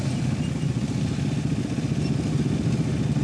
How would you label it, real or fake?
real